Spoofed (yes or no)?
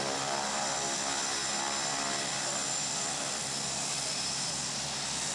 no